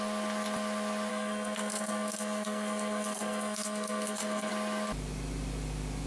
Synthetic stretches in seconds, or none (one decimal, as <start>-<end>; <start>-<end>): 1.1-4.5